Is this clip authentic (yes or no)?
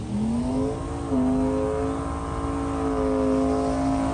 yes